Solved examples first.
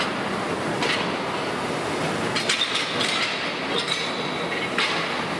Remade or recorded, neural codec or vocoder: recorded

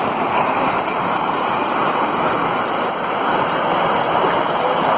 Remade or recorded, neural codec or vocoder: recorded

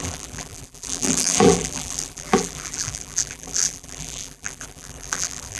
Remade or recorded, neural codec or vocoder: remade, vocoder, BigVGAN v2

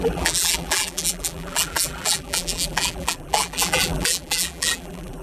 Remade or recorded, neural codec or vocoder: remade, vocoder, BigVGAN v2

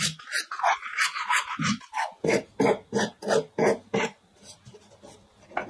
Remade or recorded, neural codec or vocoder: recorded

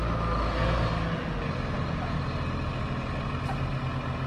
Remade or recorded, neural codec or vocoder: recorded